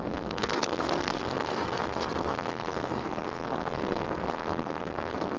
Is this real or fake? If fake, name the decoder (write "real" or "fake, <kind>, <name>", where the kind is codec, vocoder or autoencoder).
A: fake, codec, SNAC